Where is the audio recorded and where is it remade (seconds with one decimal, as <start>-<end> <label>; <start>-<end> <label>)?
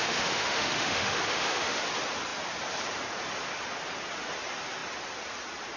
0.0-1.8 remade; 1.8-5.8 recorded